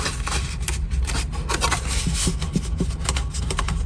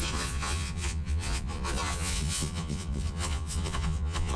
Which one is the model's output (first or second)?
second